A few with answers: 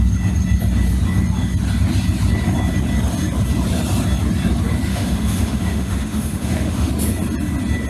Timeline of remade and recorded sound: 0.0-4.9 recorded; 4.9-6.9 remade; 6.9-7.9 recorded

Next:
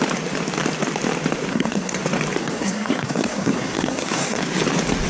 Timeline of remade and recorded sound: 0.0-1.5 recorded; 1.5-2.0 remade; 2.0-2.4 recorded; 2.4-4.4 remade; 4.4-5.1 recorded

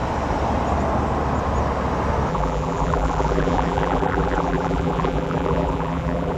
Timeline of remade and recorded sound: 0.0-2.3 recorded; 2.3-6.4 remade

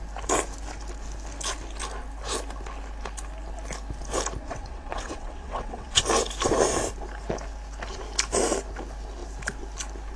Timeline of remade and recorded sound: 0.0-4.4 recorded; 4.4-6.0 remade; 6.0-10.2 recorded

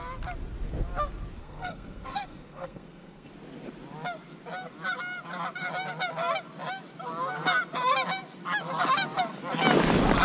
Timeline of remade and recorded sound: 0.0-1.4 recorded; 1.4-3.3 remade; 3.3-10.2 recorded

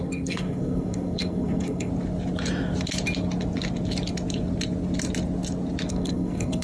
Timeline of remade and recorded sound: 0.0-1.9 remade; 1.9-5.9 recorded; 5.9-6.6 remade

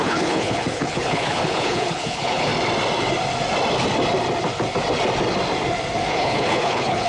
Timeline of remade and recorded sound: 0.0-2.5 remade; 2.5-6.1 recorded; 6.1-7.1 remade